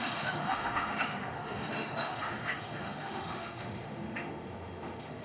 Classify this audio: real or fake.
fake